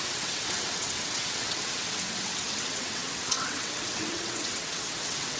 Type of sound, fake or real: fake